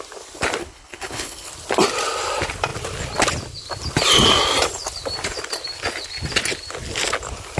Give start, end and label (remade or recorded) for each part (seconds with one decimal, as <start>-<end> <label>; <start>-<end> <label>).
0.0-0.6 recorded; 0.6-1.5 remade; 1.5-7.6 recorded